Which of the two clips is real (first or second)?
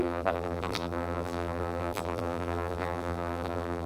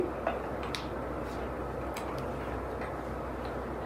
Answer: second